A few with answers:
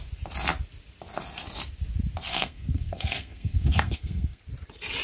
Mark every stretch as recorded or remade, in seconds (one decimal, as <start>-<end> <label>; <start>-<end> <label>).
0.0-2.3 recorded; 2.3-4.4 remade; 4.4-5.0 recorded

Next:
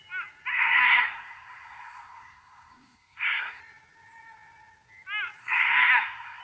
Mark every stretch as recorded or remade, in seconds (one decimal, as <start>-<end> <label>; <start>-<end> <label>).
0.0-0.5 recorded; 0.5-3.6 remade; 3.6-5.4 recorded; 5.4-6.4 remade

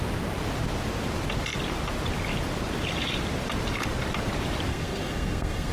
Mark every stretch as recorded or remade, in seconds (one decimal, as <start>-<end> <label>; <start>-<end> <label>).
0.0-4.7 recorded; 4.7-5.7 remade